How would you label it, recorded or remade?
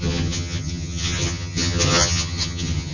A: remade